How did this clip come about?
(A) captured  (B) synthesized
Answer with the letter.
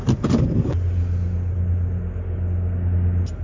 A